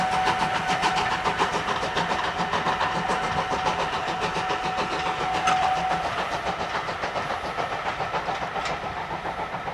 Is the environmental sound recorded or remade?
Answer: recorded